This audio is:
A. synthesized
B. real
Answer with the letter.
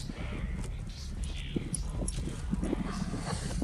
B